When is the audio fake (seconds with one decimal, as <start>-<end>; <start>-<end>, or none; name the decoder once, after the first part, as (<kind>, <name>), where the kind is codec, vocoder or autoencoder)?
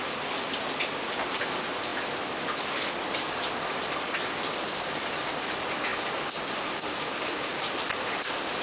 none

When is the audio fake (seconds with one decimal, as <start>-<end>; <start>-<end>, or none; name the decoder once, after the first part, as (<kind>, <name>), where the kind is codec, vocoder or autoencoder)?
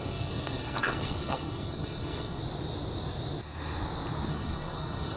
0.0-2.4 (codec, SNAC); 4.3-5.2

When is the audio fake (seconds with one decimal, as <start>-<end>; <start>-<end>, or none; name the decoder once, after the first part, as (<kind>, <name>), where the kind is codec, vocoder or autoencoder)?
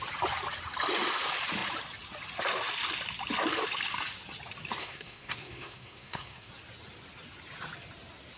4.8-6.5 (codec, SNAC)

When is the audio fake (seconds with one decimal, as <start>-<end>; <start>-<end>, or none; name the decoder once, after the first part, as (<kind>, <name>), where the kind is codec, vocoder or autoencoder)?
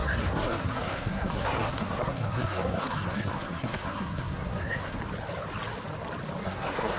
0.0-5.0 (codec, SNAC); 6.4-7.0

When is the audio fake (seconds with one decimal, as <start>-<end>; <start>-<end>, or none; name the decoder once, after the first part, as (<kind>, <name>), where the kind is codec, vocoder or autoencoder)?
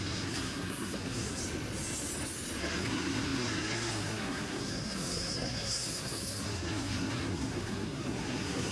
0.0-1.4 (codec, SNAC); 2.6-8.7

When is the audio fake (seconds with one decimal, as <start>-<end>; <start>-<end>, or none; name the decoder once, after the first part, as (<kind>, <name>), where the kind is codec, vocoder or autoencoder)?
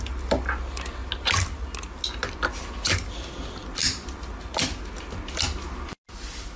none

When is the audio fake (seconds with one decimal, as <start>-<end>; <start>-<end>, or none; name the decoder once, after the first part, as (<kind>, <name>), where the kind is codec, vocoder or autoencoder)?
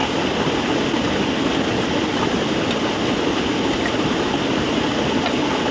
none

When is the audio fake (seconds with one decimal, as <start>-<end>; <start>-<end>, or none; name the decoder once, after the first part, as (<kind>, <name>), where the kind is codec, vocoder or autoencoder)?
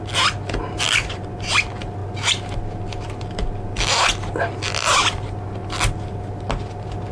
none